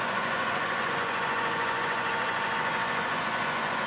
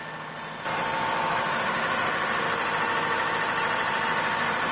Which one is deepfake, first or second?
first